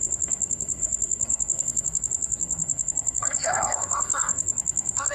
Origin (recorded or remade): remade